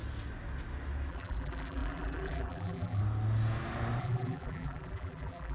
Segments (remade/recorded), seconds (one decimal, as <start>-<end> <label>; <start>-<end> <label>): 0.0-1.1 recorded; 1.1-3.0 remade; 3.0-4.0 recorded; 4.0-5.5 remade